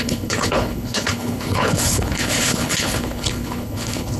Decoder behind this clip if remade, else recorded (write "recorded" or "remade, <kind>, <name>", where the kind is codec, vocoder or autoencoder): remade, codec, HILCodec